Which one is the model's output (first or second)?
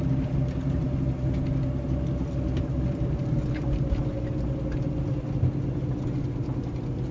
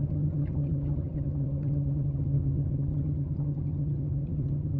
second